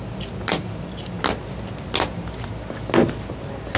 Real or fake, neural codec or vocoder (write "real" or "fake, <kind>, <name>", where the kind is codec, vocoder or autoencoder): real